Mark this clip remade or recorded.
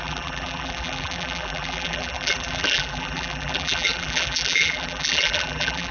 remade